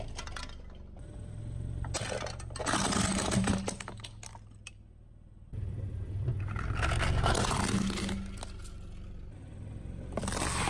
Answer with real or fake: real